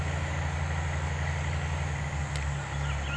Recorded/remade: recorded